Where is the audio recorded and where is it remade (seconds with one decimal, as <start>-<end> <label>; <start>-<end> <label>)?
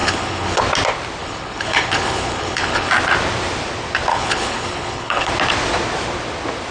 0.0-0.6 remade; 0.6-1.2 recorded; 1.2-2.9 remade; 2.9-4.1 recorded; 4.1-5.3 remade; 5.3-6.7 recorded